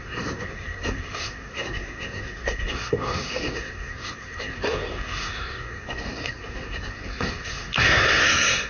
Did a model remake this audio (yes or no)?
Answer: yes